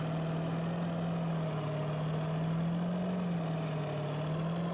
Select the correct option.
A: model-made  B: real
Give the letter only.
B